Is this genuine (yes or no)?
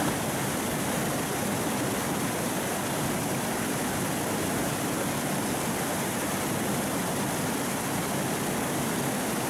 yes